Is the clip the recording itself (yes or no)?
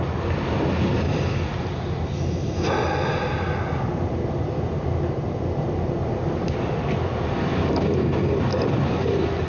yes